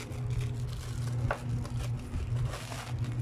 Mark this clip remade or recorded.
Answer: recorded